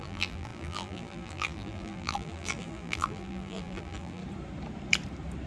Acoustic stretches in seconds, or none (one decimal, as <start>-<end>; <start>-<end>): 4.2-5.5